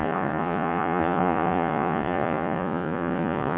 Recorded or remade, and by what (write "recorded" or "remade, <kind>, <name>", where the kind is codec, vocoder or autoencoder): remade, vocoder, Vocos